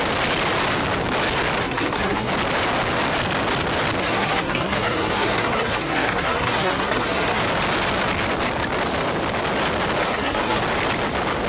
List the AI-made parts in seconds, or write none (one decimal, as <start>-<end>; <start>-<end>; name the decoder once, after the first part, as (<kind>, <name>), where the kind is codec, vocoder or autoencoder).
1.6-2.3 (codec, SNAC); 4.0-7.4; 10.0-10.6